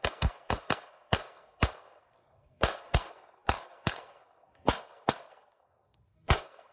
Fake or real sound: fake